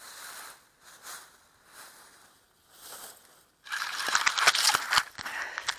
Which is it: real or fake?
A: real